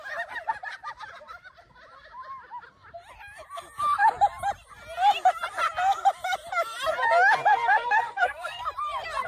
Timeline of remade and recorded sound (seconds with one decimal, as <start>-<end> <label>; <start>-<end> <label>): 0.0-7.5 recorded; 7.5-8.6 remade; 8.6-9.3 recorded